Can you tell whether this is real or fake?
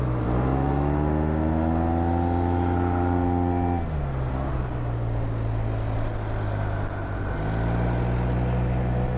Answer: real